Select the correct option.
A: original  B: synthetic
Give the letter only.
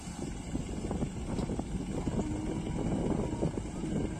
A